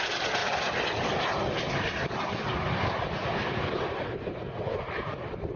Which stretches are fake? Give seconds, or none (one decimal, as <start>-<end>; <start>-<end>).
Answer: none